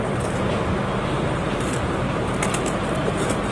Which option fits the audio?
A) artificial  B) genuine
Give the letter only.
A